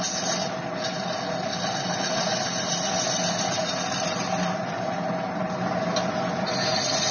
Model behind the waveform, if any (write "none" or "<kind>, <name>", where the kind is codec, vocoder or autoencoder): none